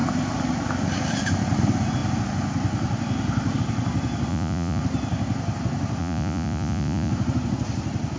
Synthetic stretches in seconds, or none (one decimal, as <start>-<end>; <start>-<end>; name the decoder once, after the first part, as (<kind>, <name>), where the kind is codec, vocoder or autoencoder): 4.3-4.8 (vocoder, Vocos); 6.0-7.1